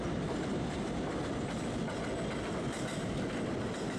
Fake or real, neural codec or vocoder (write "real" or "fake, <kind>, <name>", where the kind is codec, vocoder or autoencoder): real